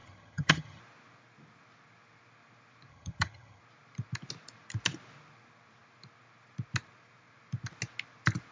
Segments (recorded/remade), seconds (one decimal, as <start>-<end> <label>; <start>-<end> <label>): 0.0-0.8 remade; 0.8-2.9 recorded; 2.9-3.6 remade; 3.6-8.5 recorded